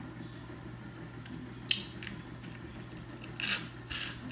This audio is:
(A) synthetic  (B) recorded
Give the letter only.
B